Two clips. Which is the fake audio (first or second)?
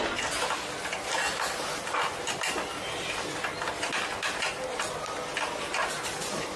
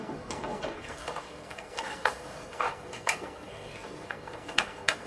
second